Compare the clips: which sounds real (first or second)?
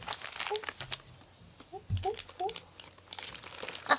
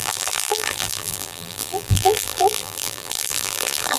first